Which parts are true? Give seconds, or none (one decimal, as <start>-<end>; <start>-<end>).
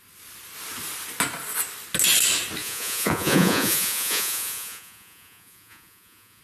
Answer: 0.0-2.6